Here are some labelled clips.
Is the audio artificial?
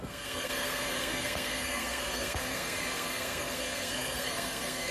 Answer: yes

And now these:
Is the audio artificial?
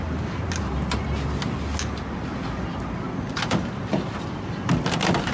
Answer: no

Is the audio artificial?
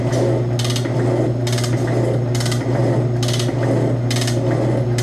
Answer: no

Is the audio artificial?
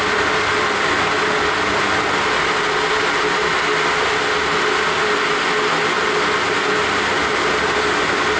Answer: no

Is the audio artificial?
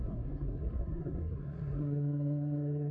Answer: yes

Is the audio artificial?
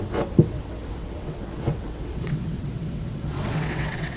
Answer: yes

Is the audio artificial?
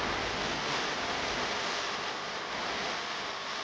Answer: no